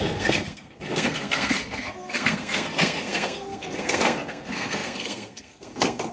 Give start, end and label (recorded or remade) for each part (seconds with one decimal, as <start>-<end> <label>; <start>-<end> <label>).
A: 0.0-6.1 remade